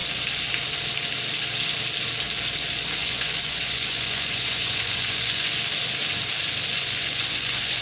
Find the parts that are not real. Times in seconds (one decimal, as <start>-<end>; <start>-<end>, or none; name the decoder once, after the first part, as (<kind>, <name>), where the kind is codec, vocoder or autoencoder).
3.0-5.5 (vocoder, Vocos); 6.7-7.8